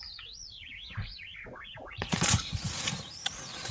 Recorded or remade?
remade